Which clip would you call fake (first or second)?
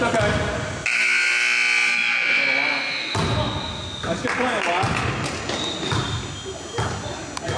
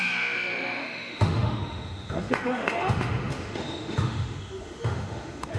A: second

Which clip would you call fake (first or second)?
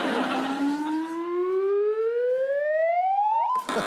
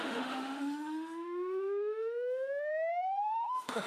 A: second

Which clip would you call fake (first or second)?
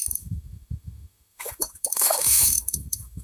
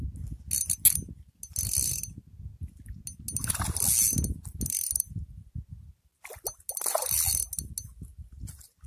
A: first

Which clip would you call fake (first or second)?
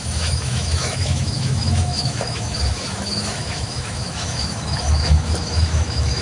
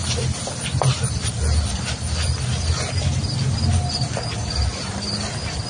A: first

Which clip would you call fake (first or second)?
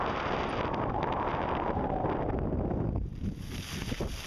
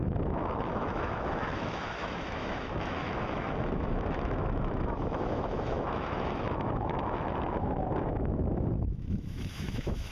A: second